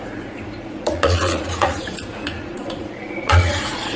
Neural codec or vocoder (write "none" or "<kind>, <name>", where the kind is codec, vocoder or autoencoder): vocoder, Vocos